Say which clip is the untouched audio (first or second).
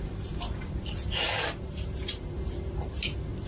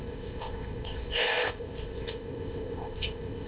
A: first